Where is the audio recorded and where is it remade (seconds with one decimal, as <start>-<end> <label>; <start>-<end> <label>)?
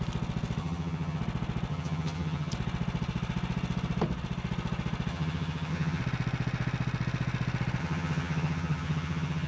0.0-0.6 recorded; 0.6-1.2 remade; 1.2-1.7 recorded; 1.7-2.5 remade; 2.5-5.1 recorded; 5.1-6.0 remade; 6.0-7.8 recorded; 7.8-9.5 remade